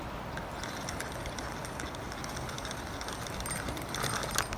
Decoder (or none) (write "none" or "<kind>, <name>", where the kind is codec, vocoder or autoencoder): none